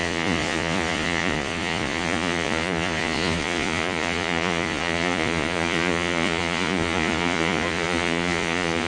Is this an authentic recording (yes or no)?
no